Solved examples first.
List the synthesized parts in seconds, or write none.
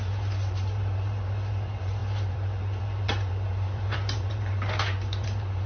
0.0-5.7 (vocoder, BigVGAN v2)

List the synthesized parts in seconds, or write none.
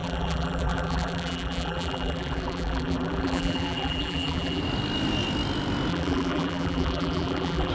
0.0-4.6 (vocoder, BigVGAN v2); 5.9-7.7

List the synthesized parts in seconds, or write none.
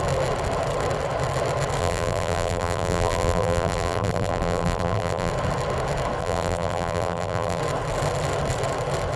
1.8-5.3 (vocoder, BigVGAN v2); 6.2-7.6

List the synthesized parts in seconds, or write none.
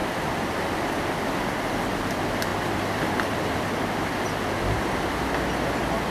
0.0-1.4 (vocoder, BigVGAN v2); 2.5-5.1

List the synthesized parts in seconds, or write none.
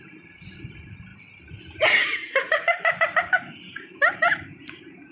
0.0-5.1 (vocoder, BigVGAN v2)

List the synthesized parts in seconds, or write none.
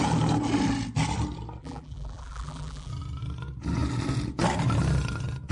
1.6-2.9 (vocoder, BigVGAN v2)